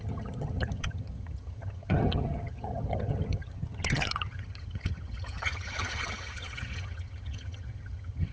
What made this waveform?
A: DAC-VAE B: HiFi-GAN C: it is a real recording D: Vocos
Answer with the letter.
B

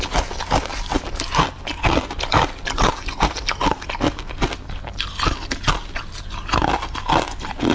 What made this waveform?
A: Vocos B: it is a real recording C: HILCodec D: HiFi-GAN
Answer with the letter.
B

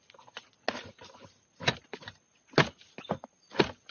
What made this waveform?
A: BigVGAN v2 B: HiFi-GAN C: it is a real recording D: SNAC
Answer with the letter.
C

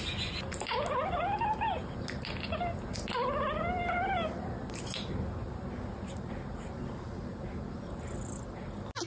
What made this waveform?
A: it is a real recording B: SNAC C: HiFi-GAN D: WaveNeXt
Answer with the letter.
A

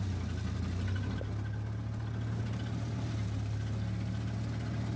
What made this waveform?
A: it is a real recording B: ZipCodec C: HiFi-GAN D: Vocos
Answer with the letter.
A